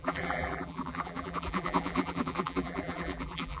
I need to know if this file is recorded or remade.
remade